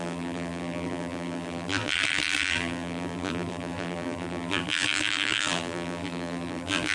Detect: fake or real fake